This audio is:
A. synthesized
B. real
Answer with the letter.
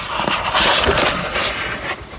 B